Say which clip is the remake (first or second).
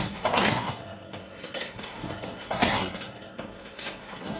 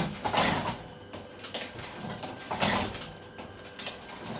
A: first